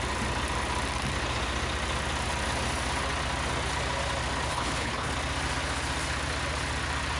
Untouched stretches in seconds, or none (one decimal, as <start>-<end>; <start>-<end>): 0.0-4.5; 5.1-7.2